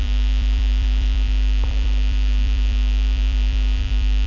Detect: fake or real fake